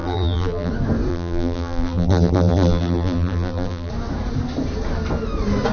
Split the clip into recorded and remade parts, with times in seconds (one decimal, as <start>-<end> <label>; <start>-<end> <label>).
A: 0.0-0.7 remade; 0.7-1.1 recorded; 1.1-3.9 remade; 3.9-5.7 recorded